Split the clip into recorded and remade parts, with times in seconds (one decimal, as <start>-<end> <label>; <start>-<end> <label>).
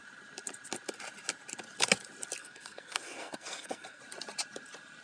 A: 0.0-2.4 recorded; 2.4-4.0 remade; 4.0-5.0 recorded